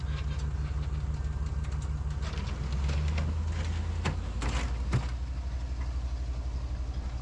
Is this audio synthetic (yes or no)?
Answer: no